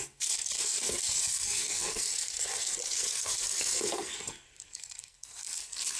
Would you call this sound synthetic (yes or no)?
yes